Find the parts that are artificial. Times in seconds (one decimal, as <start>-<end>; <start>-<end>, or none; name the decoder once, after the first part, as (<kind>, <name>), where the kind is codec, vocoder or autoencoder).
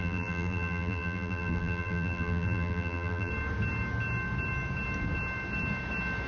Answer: 0.0-3.3 (vocoder, BigVGAN v2)